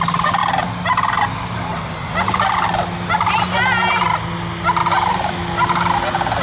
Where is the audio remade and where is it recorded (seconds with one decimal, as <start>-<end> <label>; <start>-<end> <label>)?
0.0-6.4 recorded